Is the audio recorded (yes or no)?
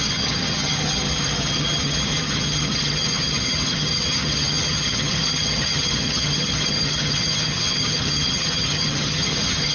no